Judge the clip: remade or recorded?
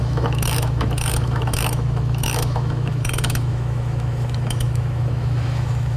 remade